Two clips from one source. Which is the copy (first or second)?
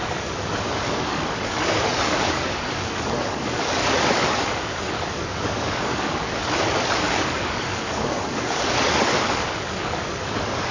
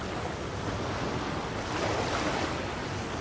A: first